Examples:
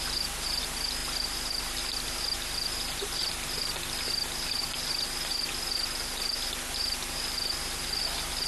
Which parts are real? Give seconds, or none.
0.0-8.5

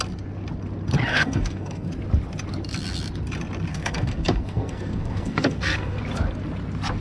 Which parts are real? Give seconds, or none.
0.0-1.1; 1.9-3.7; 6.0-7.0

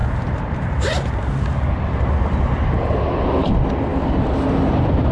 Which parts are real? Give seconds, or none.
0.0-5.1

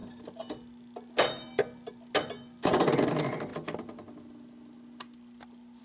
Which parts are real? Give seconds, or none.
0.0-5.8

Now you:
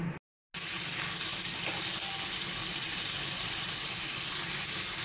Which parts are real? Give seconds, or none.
0.0-1.3; 4.3-5.0

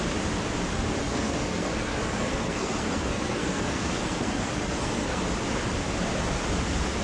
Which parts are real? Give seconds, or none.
0.0-1.0; 5.2-7.0